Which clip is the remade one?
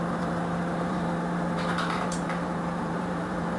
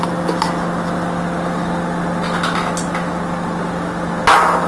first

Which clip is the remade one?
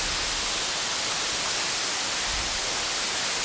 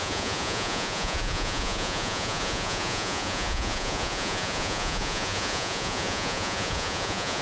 second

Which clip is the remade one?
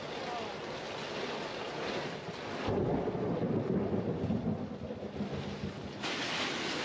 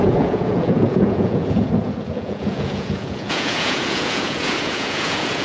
second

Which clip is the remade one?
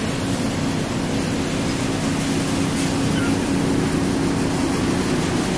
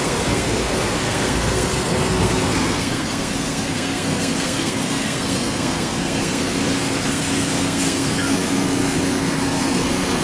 second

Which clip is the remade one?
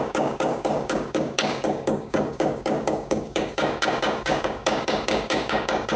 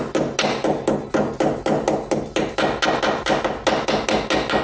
first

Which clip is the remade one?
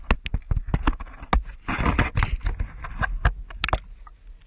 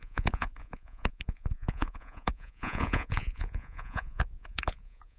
second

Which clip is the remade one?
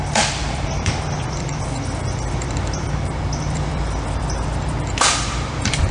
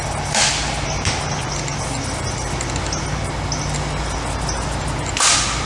first